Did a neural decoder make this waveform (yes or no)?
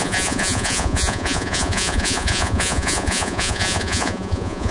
yes